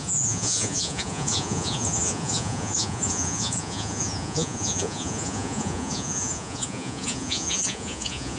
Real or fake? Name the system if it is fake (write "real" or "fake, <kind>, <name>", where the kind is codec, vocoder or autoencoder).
fake, vocoder, Vocos